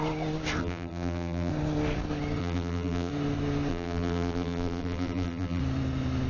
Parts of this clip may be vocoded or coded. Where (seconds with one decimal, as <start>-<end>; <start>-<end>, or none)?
0.6-1.5; 2.4-3.1; 3.7-5.6